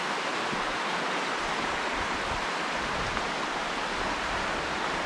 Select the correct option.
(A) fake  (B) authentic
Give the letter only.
B